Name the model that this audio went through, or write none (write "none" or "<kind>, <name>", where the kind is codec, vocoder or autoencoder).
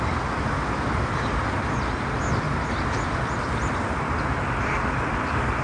none